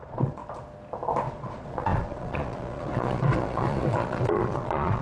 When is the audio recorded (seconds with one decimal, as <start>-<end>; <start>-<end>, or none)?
0.4-1.3